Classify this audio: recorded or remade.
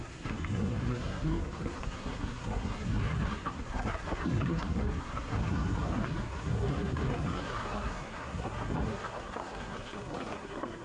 remade